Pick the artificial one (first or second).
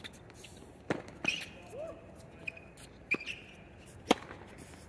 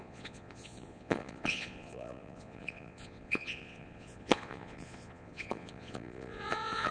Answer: second